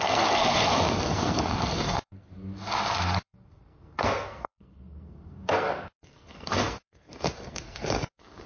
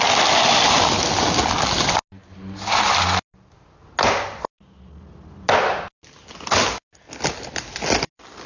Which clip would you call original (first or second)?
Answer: second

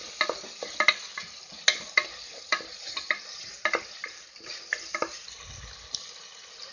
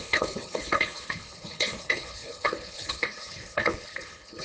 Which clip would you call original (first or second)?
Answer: first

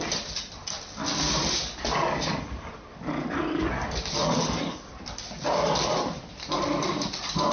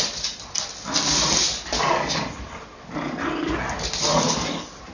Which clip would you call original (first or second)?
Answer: second